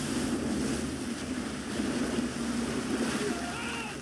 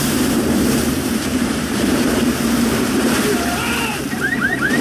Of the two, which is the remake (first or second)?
second